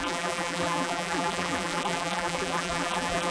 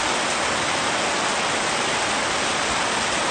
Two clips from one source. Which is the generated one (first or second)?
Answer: first